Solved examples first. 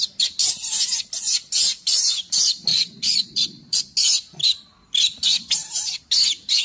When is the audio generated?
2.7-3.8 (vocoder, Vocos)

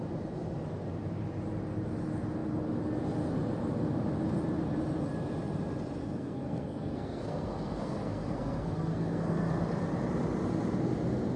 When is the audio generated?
6.0-9.5 (codec, SNAC)

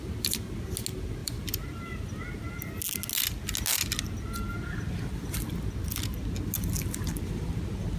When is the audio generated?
1.2-2.0 (vocoder, BigVGAN v2)

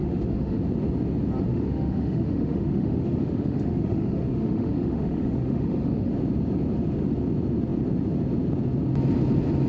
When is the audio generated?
0.0-0.6 (autoencoder, DAC-VAE); 1.5-6.1

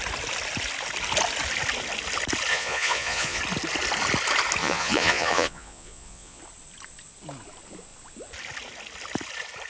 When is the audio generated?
2.5-3.4 (vocoder, Vocos); 4.6-6.4

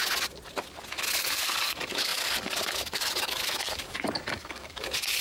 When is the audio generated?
1.2-5.2 (codec, DAC)

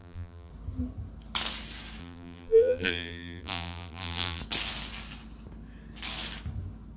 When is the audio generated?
0.0-0.5 (vocoder, BigVGAN v2); 2.0-4.4